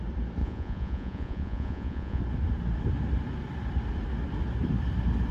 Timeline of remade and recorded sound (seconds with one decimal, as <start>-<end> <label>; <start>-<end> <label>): 0.0-0.4 recorded; 0.4-2.2 remade; 2.2-5.3 recorded